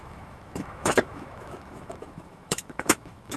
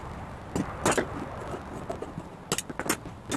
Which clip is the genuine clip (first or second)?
second